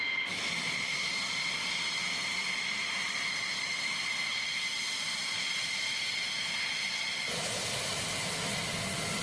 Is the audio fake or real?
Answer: real